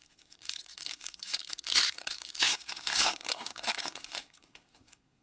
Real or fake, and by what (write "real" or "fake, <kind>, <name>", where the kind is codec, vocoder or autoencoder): fake, codec, SNAC